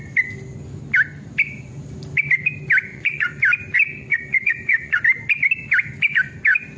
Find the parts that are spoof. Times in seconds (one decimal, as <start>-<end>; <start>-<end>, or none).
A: 2.9-3.4; 4.0-5.0